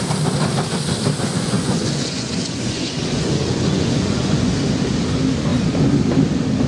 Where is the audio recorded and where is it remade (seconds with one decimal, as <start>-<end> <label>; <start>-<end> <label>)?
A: 0.0-1.3 recorded; 1.3-4.5 remade; 4.5-6.7 recorded